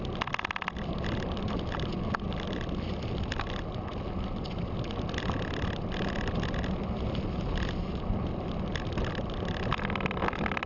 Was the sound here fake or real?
real